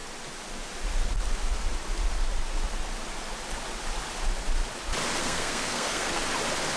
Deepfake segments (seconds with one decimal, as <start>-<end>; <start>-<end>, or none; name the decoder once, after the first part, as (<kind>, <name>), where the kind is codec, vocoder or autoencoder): 5.2-6.2 (codec, SNAC)

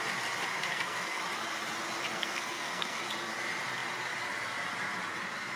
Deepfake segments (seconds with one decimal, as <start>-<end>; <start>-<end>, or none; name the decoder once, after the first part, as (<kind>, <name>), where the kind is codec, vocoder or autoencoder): 0.5-1.2 (codec, SNAC); 2.1-3.0

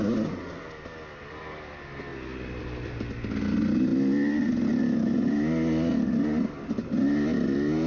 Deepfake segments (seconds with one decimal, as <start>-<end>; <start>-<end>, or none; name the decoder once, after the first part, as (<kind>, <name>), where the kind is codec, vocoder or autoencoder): none

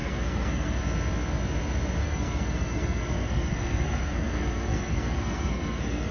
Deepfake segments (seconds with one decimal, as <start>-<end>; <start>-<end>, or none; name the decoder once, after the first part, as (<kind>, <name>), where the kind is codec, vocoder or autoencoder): 0.0-0.8 (codec, SNAC); 2.0-6.1

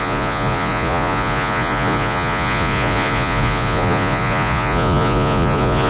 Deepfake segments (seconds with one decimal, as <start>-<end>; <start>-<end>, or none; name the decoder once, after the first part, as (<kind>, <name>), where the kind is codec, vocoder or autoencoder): 0.0-5.9 (vocoder, Vocos)

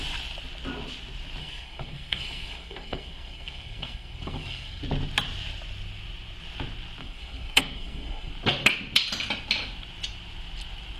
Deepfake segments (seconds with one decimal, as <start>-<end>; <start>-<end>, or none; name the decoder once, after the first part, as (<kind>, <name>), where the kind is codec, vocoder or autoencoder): 1.4-4.8 (codec, SNAC); 7.0-8.3

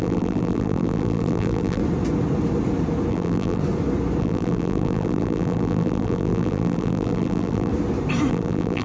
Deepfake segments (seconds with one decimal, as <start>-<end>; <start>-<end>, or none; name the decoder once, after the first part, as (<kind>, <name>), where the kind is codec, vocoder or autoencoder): 0.0-1.8 (vocoder, BigVGAN v2); 3.1-3.6; 4.2-7.7; 8.3-8.8

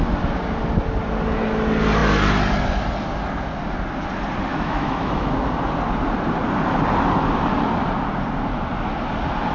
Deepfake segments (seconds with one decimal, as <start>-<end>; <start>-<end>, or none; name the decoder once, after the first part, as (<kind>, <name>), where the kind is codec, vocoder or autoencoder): 4.5-5.3 (autoencoder, DAC-VAE)